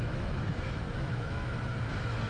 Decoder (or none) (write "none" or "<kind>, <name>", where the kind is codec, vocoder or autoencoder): autoencoder, DAC-VAE